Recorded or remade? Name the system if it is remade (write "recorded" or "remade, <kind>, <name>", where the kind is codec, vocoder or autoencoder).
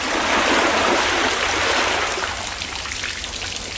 recorded